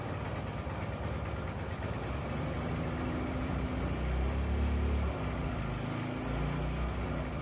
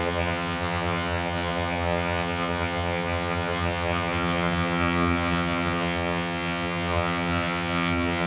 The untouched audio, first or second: first